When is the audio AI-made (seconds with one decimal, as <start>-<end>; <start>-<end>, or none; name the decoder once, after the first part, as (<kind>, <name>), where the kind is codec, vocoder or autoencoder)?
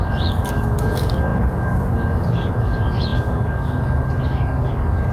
0.0-5.1 (codec, DAC)